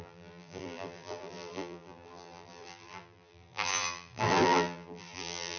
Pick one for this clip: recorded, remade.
remade